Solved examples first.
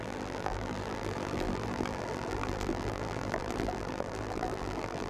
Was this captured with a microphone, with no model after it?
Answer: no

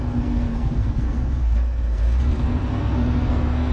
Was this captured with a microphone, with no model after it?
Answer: no